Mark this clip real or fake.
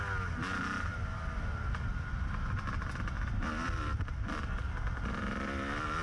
real